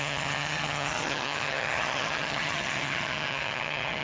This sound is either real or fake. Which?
fake